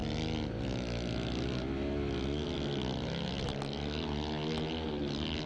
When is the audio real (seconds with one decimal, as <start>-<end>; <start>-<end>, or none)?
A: 0.0-5.5